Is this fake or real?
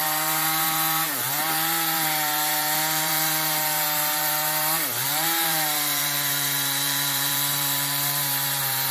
fake